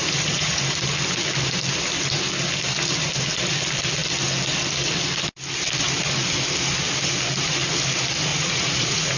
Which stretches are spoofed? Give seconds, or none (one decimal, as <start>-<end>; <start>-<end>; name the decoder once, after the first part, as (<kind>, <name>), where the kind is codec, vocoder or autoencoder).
0.0-0.6 (vocoder, Vocos); 8.3-9.2